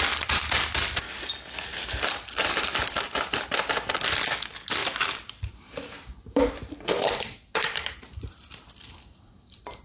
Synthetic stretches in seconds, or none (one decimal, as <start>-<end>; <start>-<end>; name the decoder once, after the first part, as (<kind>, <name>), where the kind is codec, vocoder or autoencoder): 1.7-3.7 (vocoder, BigVGAN v2); 4.8-9.8